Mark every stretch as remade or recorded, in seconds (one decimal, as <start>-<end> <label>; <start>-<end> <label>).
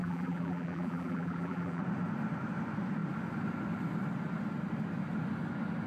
0.0-1.8 remade; 1.8-5.9 recorded